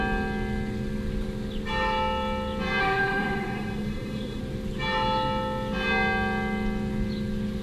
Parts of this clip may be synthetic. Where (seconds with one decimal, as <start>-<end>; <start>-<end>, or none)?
2.8-4.4